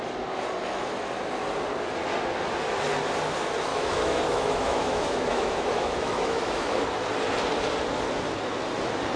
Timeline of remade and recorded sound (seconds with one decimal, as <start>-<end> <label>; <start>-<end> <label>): 0.0-3.7 recorded; 3.7-6.8 remade; 6.8-9.2 recorded